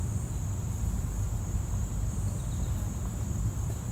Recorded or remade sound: recorded